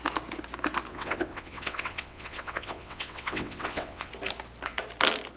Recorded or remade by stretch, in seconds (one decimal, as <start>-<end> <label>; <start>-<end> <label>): 0.0-0.9 recorded; 0.9-4.1 remade; 4.1-5.4 recorded